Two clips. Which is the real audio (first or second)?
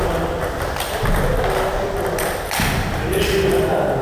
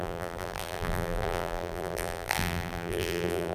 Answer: first